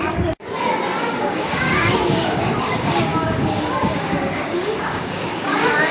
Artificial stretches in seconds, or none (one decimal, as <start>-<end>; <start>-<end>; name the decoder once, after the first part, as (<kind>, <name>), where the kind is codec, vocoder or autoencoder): 0.0-0.4 (codec, DAC); 1.0-5.9